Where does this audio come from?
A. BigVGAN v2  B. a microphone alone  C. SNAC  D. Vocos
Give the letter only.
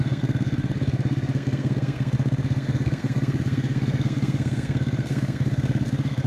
C